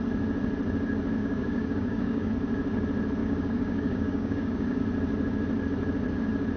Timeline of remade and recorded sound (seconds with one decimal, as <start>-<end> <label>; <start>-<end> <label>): 0.0-1.2 recorded; 1.2-2.3 remade; 2.3-3.2 recorded; 3.2-4.8 remade; 4.8-6.6 recorded